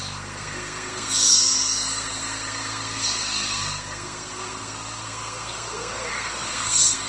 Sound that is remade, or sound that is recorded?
remade